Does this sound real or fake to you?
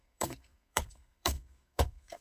fake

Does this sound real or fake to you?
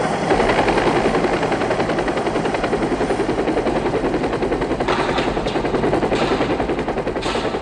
real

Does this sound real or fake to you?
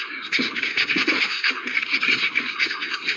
fake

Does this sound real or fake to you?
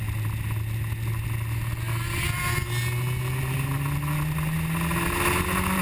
real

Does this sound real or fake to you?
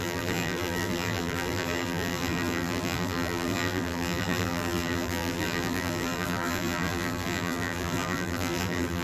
fake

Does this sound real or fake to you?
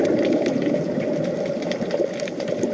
real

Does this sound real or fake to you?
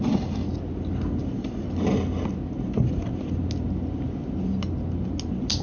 real